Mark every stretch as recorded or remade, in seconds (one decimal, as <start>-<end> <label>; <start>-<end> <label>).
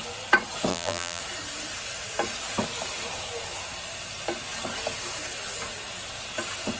0.0-0.7 recorded; 0.7-1.2 remade; 1.2-6.8 recorded